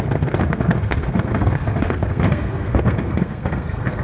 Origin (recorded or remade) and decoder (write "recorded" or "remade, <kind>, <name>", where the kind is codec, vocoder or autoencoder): remade, codec, SNAC